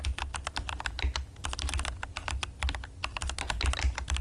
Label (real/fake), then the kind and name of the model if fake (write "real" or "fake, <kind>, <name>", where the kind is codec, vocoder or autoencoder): real